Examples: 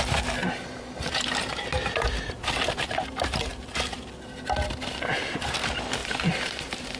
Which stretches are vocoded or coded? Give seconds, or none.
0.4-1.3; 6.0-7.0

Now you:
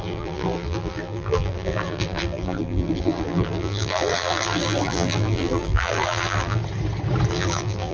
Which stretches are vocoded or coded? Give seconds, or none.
0.0-6.6; 7.3-7.9